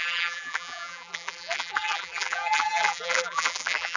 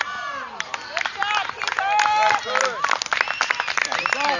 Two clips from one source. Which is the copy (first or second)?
first